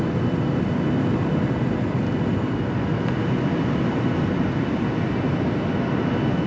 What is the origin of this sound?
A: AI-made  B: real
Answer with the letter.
B